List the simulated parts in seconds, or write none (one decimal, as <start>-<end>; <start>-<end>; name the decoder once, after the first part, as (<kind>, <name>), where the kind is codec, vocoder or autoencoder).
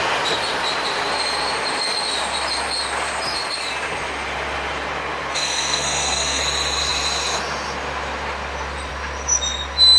5.3-6.4 (codec, SNAC)